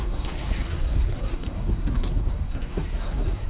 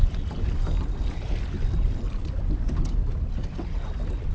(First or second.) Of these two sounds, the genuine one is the second